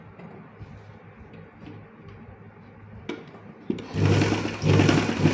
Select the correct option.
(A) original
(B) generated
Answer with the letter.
A